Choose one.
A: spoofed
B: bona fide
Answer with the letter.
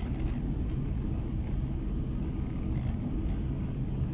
B